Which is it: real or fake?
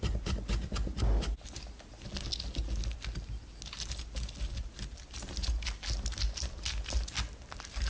real